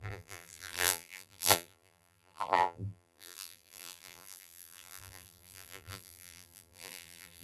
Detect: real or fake fake